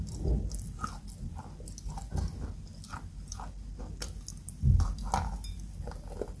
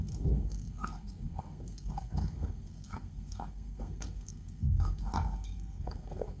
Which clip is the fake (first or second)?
second